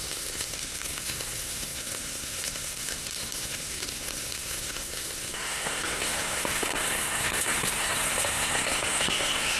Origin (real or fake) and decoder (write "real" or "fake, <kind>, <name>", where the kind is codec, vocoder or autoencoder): fake, codec, SNAC